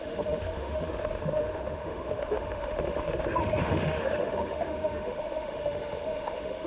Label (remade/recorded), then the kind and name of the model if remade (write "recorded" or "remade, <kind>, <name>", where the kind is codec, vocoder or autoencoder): remade, autoencoder, DAC-VAE